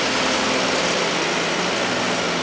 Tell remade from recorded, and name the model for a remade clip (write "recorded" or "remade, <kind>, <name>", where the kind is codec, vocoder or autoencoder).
recorded